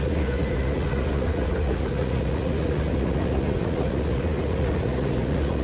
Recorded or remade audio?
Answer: remade